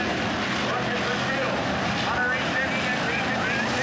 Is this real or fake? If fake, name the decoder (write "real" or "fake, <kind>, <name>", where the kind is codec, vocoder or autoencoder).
real